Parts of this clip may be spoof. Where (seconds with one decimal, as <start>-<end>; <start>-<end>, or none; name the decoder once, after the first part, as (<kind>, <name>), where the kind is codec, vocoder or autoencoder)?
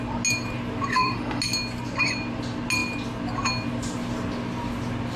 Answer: 0.9-1.4 (autoencoder, DAC-VAE)